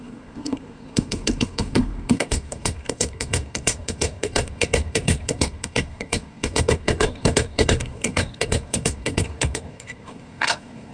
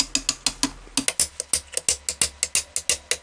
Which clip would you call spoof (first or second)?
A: first